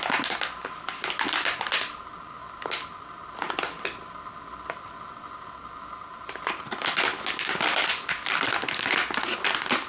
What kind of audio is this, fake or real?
real